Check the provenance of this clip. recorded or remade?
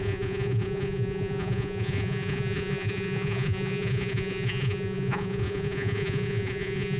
remade